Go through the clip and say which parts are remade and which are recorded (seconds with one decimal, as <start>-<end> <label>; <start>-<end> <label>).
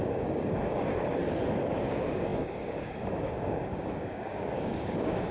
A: 0.0-1.2 remade; 1.2-1.7 recorded; 1.7-5.3 remade